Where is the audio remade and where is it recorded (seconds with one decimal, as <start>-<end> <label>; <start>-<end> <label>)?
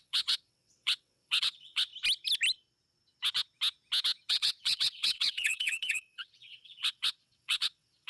0.0-1.9 remade; 1.9-4.3 recorded; 4.3-8.1 remade